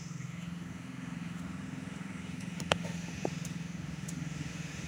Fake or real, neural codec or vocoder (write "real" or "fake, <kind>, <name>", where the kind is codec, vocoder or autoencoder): fake, autoencoder, DAC-VAE